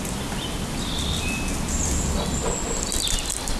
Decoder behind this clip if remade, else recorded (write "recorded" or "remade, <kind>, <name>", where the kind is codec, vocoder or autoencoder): recorded